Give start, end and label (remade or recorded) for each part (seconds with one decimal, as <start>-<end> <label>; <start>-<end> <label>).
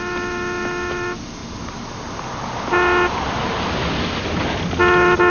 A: 0.0-5.3 recorded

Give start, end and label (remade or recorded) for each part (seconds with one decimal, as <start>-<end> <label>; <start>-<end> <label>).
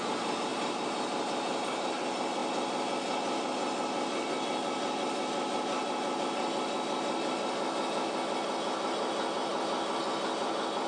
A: 0.0-9.5 recorded; 9.5-10.0 remade; 10.0-10.9 recorded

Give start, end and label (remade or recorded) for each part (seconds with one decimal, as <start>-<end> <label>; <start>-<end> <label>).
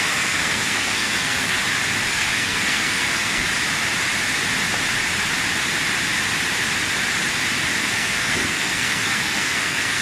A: 0.0-1.6 remade; 1.6-2.1 recorded; 2.1-3.5 remade; 3.5-7.8 recorded; 7.8-10.0 remade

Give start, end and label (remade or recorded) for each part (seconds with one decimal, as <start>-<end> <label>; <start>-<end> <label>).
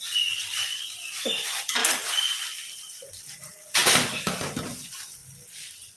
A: 0.0-1.8 remade; 1.8-3.1 recorded; 3.1-3.8 remade; 3.8-4.6 recorded; 4.6-6.0 remade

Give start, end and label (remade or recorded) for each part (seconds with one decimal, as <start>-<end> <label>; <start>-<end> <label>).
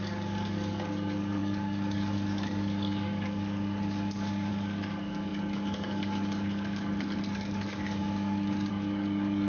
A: 0.0-9.5 remade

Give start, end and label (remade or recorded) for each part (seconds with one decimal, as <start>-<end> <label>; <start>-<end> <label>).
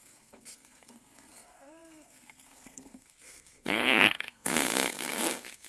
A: 0.0-5.7 remade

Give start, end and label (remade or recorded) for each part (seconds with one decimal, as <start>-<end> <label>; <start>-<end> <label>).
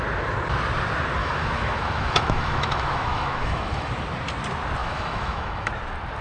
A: 0.0-1.2 recorded; 1.2-3.9 remade; 3.9-4.8 recorded; 4.8-5.7 remade; 5.7-6.2 recorded